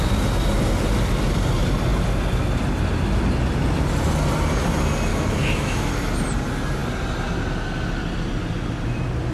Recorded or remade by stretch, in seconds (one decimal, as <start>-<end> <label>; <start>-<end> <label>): 0.0-5.1 recorded; 5.1-5.9 remade; 5.9-9.3 recorded